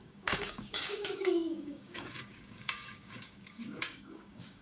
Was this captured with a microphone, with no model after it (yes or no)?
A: no